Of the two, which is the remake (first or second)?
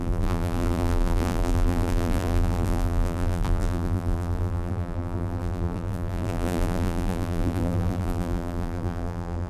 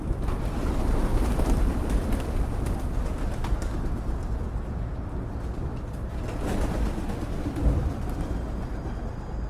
first